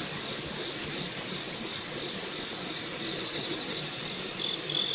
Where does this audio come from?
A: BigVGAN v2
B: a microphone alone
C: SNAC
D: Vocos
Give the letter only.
B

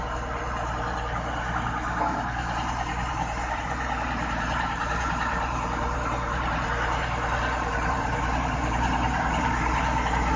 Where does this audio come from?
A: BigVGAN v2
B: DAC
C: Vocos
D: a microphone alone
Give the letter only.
A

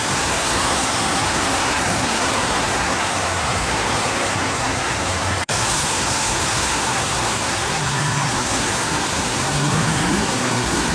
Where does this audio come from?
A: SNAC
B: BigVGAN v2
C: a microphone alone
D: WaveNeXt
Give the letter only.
A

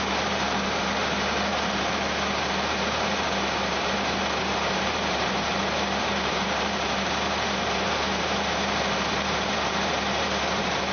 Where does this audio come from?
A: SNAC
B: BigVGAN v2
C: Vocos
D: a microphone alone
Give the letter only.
B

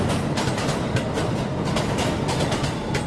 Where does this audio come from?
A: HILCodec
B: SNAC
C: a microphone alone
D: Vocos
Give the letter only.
C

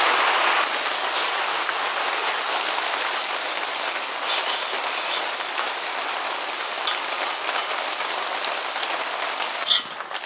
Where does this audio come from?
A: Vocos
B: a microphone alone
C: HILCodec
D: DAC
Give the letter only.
B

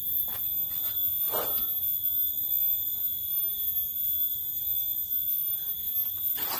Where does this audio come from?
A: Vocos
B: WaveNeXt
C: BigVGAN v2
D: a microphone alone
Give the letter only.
D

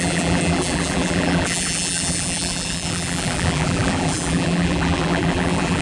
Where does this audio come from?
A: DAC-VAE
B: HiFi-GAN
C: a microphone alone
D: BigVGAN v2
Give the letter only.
D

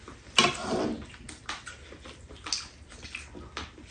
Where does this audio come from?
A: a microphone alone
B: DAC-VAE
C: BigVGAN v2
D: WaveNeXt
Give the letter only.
A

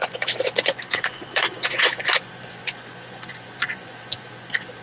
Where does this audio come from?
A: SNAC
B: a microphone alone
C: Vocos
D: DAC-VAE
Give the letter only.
C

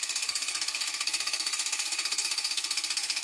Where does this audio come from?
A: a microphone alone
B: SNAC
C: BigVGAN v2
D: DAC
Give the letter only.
B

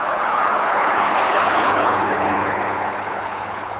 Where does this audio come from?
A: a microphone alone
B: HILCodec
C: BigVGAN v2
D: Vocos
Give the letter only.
B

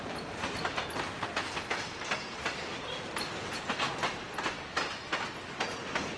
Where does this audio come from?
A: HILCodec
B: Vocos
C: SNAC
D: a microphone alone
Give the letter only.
D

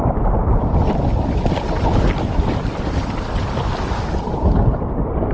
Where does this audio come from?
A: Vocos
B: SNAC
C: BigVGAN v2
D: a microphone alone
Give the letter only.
D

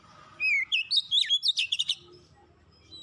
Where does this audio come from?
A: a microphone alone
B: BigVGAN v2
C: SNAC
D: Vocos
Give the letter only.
A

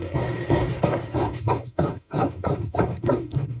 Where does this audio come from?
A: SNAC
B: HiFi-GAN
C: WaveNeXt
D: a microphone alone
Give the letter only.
A